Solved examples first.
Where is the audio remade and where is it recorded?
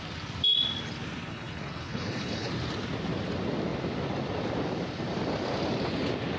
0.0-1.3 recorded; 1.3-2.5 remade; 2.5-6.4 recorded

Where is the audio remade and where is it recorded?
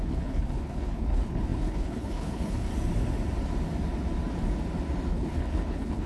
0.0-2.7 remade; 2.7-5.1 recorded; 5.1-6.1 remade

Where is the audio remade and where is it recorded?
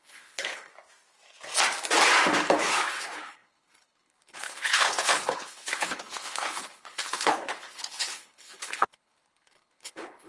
0.0-0.7 remade; 0.7-2.6 recorded; 2.6-10.3 remade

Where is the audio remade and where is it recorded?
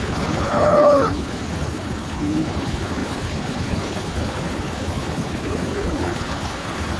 0.0-7.0 remade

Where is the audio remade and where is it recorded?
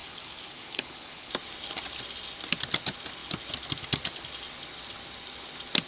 0.0-1.3 remade; 1.3-5.9 recorded